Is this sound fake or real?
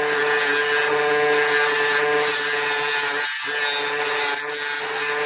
real